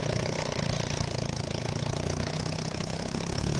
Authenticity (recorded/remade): remade